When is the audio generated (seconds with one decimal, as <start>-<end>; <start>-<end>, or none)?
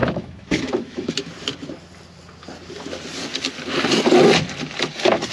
0.0-1.3